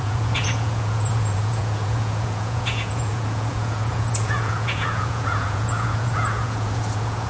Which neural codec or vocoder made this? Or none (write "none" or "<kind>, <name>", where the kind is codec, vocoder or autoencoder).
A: vocoder, Vocos